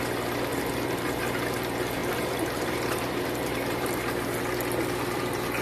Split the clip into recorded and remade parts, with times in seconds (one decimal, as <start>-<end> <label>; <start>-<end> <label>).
0.0-0.5 recorded; 0.5-1.2 remade; 1.2-2.0 recorded; 2.0-4.4 remade; 4.4-5.6 recorded